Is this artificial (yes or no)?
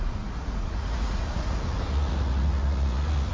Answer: yes